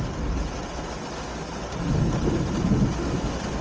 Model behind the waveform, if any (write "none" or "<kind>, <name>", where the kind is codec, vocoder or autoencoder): none